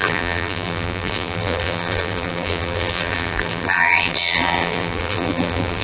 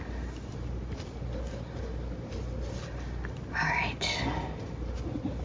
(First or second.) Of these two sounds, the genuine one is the second